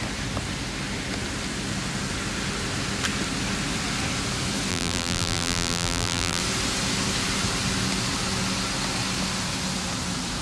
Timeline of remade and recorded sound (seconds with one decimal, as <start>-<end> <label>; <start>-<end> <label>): 0.0-4.7 recorded; 4.7-6.4 remade; 6.4-10.4 recorded